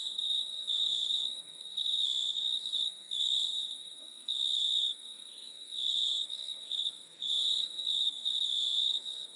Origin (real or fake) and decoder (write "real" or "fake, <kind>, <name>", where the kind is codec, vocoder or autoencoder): fake, codec, SNAC